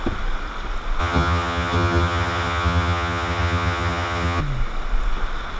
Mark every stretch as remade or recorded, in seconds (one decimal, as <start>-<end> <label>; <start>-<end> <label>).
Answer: 0.0-1.0 recorded; 1.0-4.4 remade; 4.4-5.6 recorded